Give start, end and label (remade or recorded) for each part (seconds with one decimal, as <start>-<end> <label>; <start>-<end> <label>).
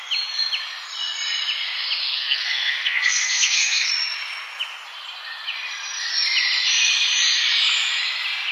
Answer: 0.0-2.1 recorded; 2.1-3.9 remade; 3.9-8.5 recorded